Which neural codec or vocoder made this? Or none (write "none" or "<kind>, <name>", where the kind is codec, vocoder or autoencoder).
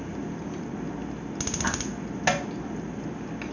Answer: none